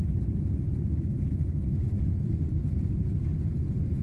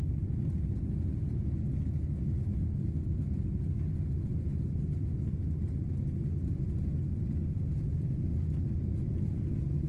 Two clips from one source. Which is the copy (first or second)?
first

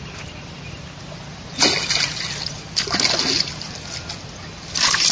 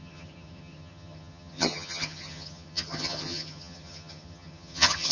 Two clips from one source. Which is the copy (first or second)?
second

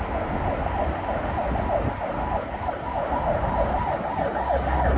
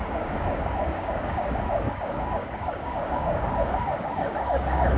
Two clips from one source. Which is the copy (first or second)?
second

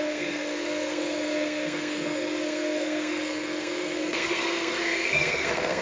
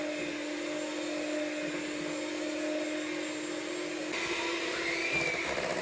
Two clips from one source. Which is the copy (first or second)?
first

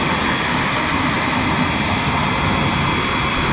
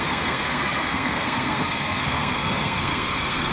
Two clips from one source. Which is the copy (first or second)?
second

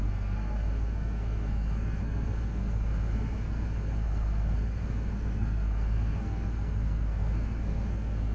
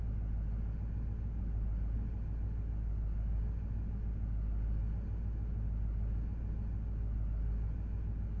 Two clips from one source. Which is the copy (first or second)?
first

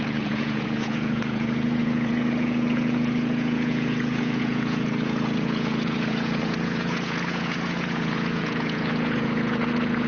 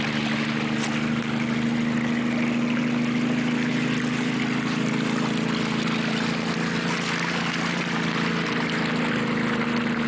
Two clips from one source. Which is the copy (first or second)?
first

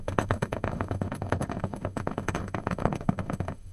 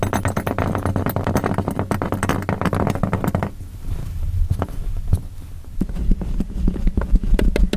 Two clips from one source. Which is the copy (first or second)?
first